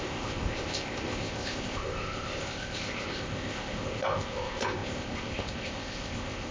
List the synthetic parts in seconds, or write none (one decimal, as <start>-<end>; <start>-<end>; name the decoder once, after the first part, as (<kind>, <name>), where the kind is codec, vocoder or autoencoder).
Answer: 0.0-6.5 (codec, ZipCodec)